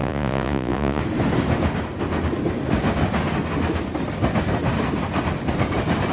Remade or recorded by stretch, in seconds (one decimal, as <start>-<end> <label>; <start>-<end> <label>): 0.0-1.0 remade; 1.0-6.1 recorded